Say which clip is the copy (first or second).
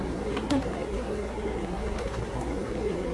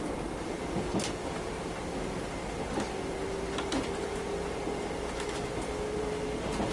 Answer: first